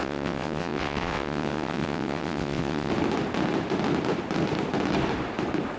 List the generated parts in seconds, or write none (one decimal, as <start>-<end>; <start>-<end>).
0.0-2.9